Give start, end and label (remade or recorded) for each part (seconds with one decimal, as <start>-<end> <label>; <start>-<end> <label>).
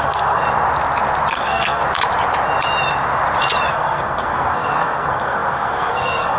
0.0-0.4 remade; 0.4-1.3 recorded; 1.3-1.8 remade; 1.8-3.7 recorded; 3.7-6.4 remade